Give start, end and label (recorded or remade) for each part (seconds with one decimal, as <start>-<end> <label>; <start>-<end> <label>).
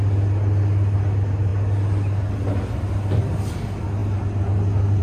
0.0-5.0 recorded